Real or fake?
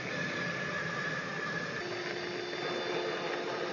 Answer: real